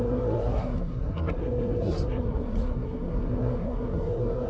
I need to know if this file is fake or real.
fake